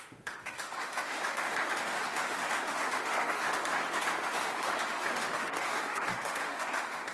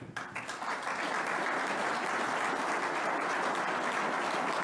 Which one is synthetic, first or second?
first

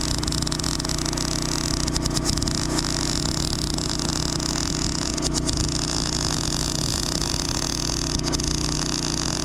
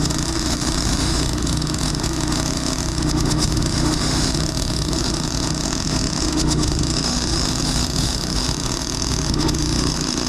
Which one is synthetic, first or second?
second